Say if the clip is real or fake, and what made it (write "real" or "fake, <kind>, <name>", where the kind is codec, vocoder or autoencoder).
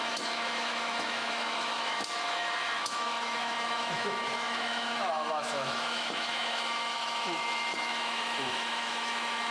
fake, autoencoder, DAC-VAE